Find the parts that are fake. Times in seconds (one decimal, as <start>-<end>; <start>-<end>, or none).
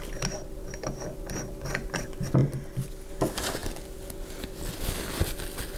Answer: none